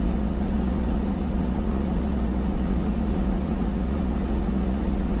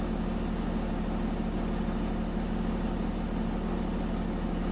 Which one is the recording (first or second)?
second